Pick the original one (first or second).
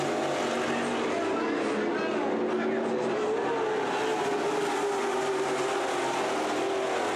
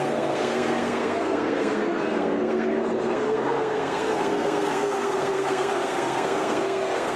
first